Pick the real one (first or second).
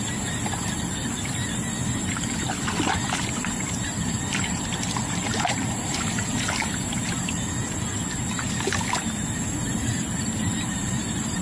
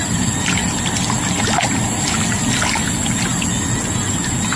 second